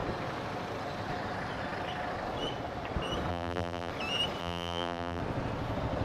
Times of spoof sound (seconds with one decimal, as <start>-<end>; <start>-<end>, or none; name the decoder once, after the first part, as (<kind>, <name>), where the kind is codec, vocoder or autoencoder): 3.3-3.9 (vocoder, BigVGAN v2); 4.4-5.2